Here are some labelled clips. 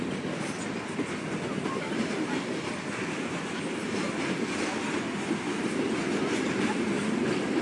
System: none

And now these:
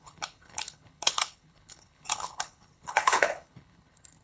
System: codec, HILCodec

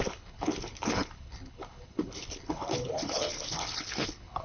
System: codec, HILCodec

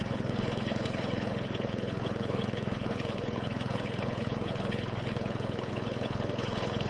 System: codec, HILCodec